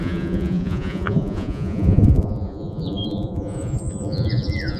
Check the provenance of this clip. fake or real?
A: fake